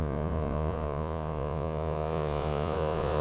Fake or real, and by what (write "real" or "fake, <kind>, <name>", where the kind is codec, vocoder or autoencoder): fake, vocoder, Vocos